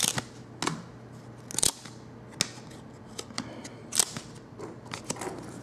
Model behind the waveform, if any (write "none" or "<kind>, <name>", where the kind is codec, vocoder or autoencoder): none